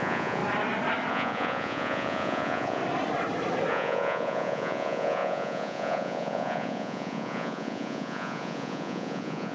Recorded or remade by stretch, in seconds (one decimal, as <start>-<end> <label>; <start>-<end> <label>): 0.0-0.4 remade; 0.4-1.1 recorded; 1.1-2.8 remade; 2.8-3.7 recorded; 3.7-9.5 remade